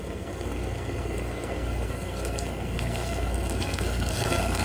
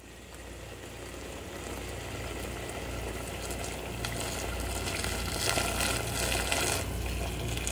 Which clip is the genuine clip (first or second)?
second